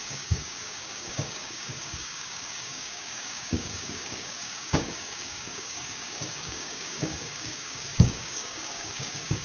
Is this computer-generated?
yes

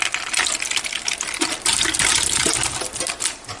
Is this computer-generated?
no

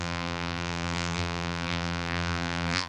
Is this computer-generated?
yes